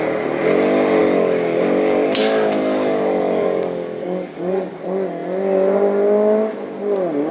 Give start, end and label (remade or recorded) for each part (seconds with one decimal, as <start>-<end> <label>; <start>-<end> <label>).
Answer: 0.0-1.0 recorded; 1.0-4.8 remade; 4.8-7.3 recorded